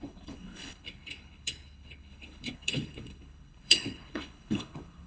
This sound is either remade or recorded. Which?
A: remade